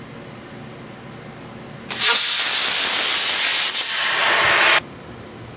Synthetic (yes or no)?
no